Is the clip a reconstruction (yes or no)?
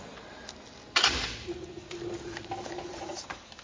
no